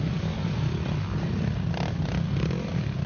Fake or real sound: real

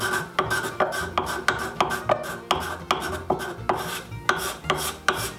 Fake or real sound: real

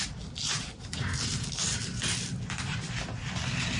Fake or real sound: fake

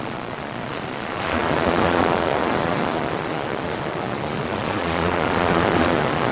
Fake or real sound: fake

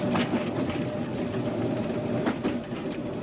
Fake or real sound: real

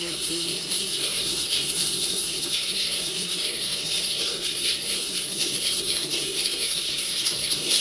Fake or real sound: fake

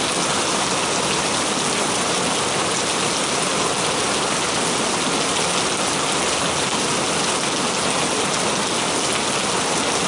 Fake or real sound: real